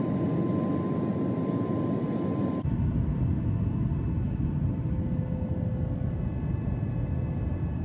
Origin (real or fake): real